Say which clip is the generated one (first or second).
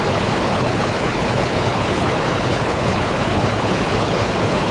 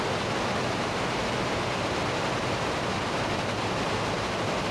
first